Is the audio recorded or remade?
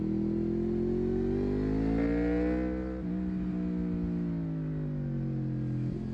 recorded